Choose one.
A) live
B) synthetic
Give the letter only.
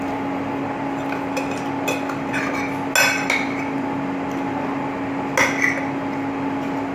A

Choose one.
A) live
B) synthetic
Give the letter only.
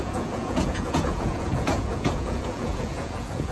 B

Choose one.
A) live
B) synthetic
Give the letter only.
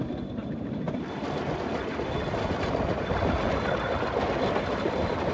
A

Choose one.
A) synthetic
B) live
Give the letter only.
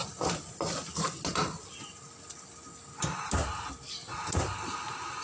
B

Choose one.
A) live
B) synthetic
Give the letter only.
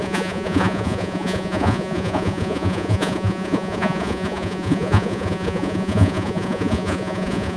B